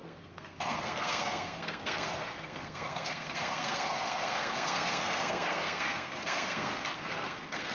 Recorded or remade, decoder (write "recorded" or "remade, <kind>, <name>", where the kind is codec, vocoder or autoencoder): remade, codec, SNAC